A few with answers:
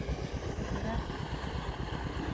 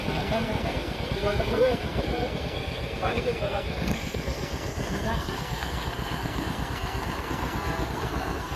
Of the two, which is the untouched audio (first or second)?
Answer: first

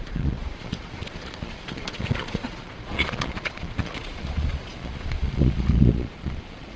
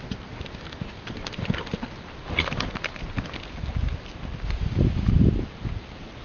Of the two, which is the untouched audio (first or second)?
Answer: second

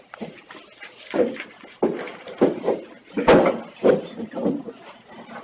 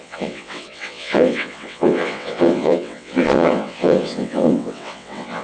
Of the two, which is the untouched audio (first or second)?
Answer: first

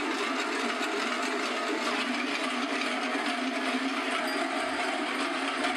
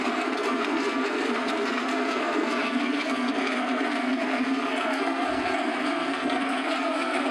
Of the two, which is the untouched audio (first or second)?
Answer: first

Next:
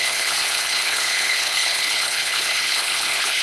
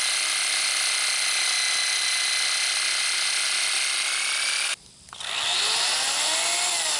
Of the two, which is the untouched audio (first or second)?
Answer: second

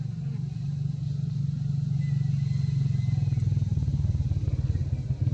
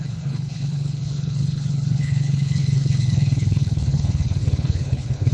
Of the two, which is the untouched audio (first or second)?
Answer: first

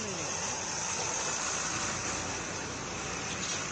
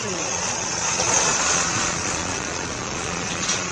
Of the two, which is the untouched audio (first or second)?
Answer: first